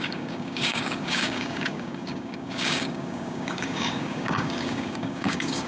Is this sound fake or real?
fake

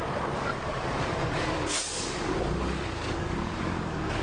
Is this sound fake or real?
fake